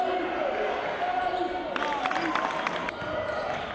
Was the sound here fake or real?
real